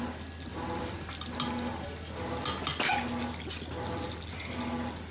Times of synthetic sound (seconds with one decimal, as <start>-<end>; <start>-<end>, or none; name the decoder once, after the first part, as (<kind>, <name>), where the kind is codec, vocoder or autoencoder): none